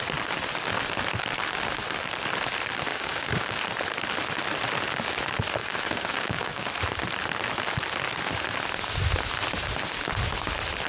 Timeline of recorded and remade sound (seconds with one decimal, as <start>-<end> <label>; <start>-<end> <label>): 0.0-2.9 recorded; 2.9-3.6 remade; 3.6-5.6 recorded; 5.6-6.7 remade; 6.7-10.9 recorded